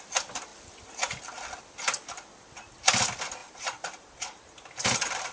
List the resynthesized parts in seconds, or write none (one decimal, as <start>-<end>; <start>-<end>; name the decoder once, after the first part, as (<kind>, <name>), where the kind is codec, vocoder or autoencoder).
3.4-5.3 (vocoder, BigVGAN v2)